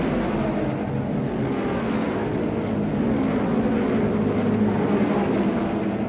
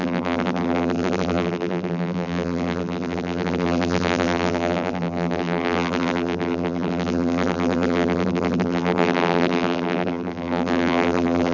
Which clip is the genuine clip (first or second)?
first